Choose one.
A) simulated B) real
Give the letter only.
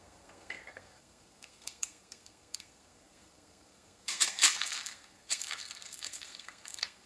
A